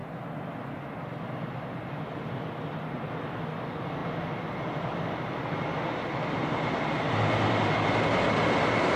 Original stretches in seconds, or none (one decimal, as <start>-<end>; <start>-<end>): 0.0-9.0